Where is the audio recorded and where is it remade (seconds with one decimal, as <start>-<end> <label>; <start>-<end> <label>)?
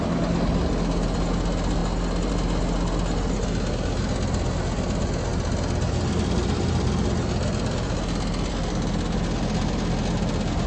0.0-10.7 recorded